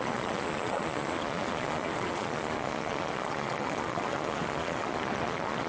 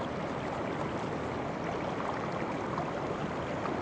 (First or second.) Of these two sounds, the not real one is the first